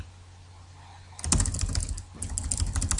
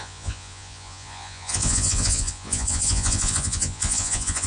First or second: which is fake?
second